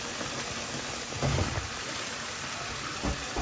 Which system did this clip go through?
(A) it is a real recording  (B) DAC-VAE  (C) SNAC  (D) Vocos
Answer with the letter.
A